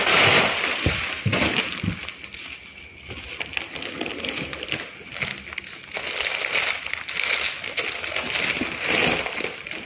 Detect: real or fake real